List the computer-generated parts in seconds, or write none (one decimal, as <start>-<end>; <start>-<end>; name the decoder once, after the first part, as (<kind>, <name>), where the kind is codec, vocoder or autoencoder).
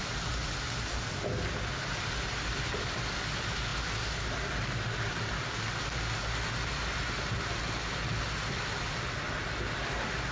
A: none